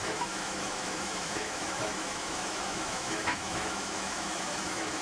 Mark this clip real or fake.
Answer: fake